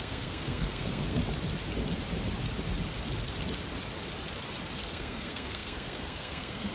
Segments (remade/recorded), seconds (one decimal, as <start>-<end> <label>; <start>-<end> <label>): 0.0-1.2 remade; 1.2-4.9 recorded; 4.9-6.7 remade